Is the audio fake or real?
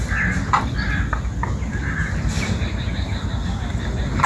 real